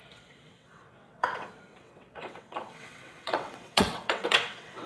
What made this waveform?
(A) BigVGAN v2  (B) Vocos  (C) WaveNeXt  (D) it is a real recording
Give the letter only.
C